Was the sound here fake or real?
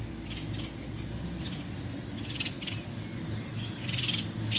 real